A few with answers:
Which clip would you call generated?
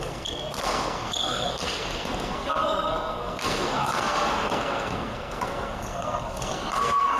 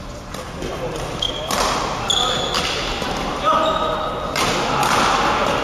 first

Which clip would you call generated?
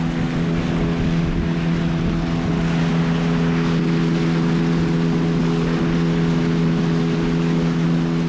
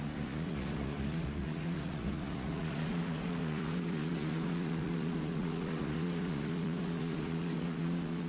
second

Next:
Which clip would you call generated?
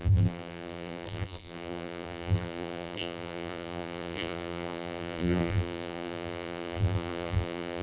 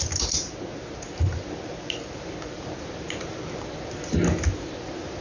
first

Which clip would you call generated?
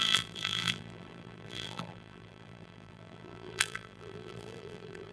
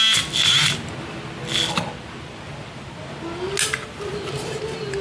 first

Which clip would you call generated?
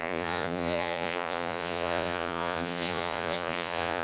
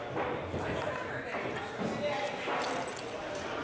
first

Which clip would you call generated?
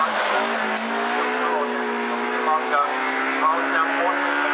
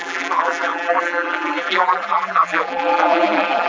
second